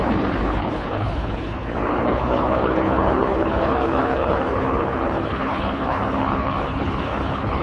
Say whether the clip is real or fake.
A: fake